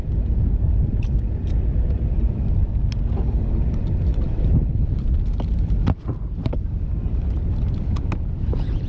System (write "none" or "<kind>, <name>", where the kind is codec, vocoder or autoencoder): vocoder, BigVGAN v2